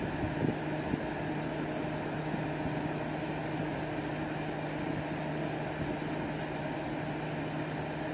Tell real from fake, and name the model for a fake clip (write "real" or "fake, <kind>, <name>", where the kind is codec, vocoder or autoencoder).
real